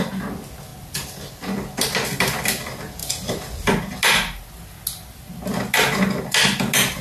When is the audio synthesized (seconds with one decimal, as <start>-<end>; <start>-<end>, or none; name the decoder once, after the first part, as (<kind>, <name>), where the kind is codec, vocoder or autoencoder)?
none